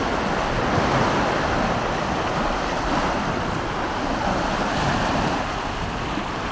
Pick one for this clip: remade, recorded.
recorded